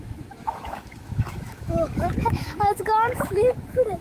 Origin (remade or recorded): remade